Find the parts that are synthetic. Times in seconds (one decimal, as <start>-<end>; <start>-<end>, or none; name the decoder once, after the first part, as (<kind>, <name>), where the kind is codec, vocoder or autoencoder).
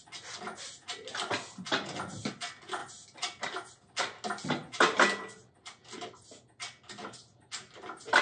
none